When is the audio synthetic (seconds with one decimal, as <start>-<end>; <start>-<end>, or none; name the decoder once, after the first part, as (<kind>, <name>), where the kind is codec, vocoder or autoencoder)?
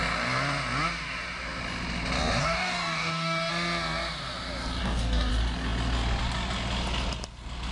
2.4-3.5 (codec, DAC); 4.8-5.3